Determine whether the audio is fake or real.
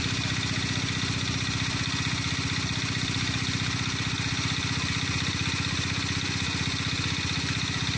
real